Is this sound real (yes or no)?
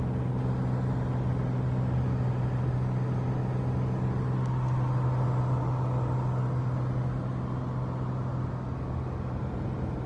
yes